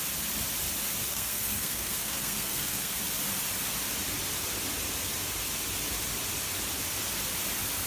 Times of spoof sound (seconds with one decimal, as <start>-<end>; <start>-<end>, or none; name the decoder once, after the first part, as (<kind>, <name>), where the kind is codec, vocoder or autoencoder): 1.1-3.0 (codec, SNAC)